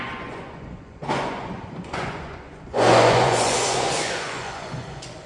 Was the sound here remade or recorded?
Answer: remade